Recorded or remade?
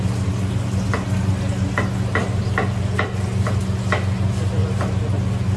recorded